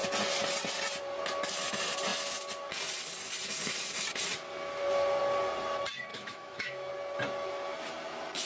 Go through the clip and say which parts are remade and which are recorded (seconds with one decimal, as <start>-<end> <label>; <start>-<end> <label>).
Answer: 0.0-6.1 recorded; 6.1-6.9 remade; 6.9-8.5 recorded